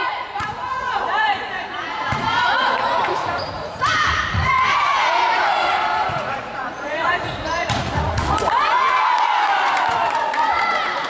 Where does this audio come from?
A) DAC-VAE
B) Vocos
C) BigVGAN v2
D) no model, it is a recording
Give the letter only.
B